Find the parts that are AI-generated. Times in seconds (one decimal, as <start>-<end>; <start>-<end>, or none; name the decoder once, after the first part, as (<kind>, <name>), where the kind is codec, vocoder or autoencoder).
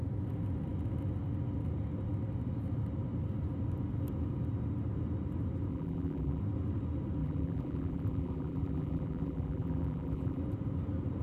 5.7-6.4 (vocoder, BigVGAN v2); 7.2-10.4